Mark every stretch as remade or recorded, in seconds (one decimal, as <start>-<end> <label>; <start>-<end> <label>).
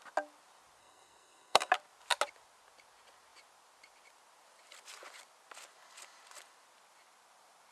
0.0-0.8 recorded; 0.8-1.7 remade; 1.7-7.7 recorded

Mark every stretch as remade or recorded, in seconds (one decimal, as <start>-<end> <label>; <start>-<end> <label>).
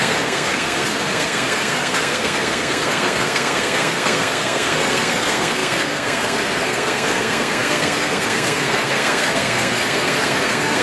0.0-10.8 remade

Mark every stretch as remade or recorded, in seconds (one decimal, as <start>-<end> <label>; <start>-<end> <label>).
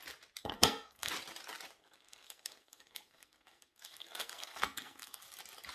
0.0-0.4 recorded; 0.4-1.1 remade; 1.1-1.8 recorded; 1.8-5.2 remade; 5.2-5.7 recorded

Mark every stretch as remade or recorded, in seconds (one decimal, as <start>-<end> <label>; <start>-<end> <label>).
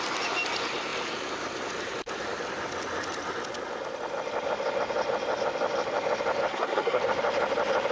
0.0-6.5 recorded; 6.5-7.0 remade; 7.0-7.9 recorded